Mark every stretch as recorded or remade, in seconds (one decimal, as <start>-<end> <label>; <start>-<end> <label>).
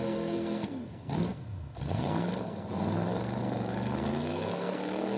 0.0-5.2 remade